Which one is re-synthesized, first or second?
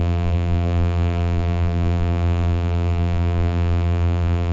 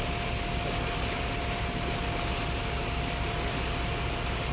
first